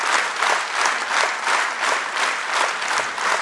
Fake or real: real